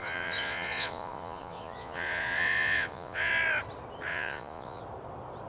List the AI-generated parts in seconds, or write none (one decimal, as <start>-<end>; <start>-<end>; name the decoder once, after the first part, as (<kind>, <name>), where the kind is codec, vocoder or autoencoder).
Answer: 0.0-3.3 (vocoder, Vocos); 4.1-4.8